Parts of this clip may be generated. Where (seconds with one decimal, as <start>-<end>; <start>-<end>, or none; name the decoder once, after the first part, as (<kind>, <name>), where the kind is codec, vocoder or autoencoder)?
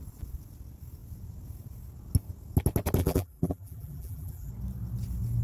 3.0-4.5 (vocoder, BigVGAN v2)